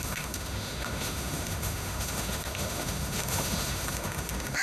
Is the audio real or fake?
fake